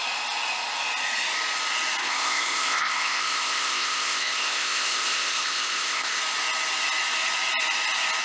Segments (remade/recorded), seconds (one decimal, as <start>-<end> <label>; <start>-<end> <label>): 0.0-2.0 recorded; 2.0-6.2 remade; 6.2-8.2 recorded